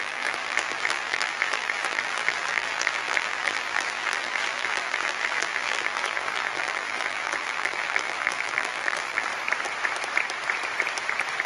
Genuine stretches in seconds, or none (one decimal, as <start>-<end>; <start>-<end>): 9.3-11.5